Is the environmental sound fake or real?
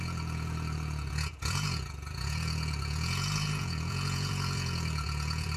fake